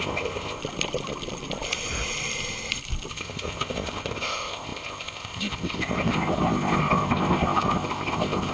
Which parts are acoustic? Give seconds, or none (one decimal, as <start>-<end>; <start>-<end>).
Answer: 0.6-3.1